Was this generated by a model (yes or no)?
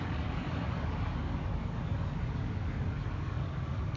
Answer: yes